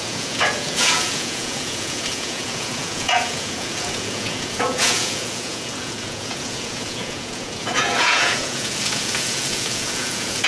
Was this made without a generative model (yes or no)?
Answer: no